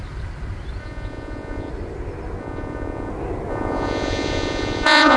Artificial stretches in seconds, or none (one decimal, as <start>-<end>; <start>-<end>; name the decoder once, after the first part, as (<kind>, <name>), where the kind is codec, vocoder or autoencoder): 0.8-1.7 (vocoder, Vocos); 2.4-3.1; 3.5-5.2